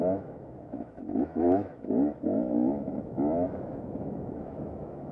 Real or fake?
fake